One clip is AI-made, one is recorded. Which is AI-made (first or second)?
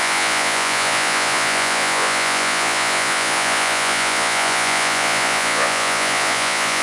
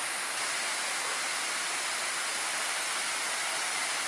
first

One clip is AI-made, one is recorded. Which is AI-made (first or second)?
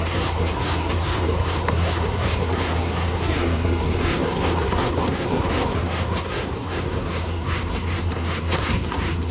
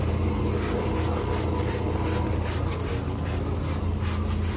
first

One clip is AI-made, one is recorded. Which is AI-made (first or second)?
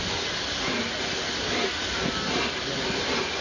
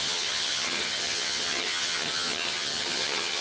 second